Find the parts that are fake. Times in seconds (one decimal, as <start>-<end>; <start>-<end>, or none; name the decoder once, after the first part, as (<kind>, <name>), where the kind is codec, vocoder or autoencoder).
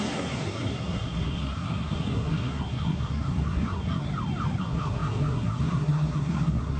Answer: 0.0-4.1 (codec, SNAC); 4.6-6.8